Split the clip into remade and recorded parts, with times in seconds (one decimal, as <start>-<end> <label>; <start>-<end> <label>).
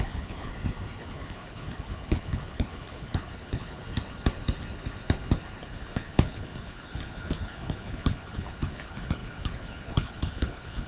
0.0-0.5 remade; 0.5-1.0 recorded; 1.0-3.8 remade; 3.8-5.6 recorded; 5.6-10.9 remade